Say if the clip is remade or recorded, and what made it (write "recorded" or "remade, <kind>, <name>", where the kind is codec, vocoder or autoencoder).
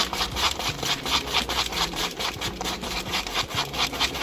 remade, vocoder, BigVGAN v2